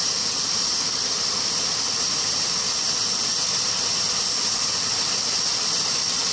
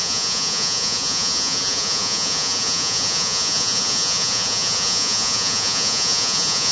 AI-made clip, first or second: second